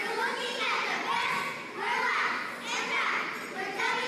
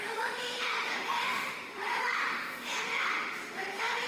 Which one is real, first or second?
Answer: first